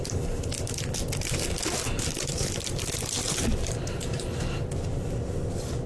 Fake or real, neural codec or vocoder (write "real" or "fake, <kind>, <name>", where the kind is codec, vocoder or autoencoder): real